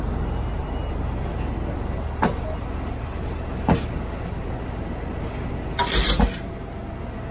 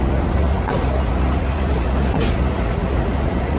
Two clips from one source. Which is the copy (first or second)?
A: second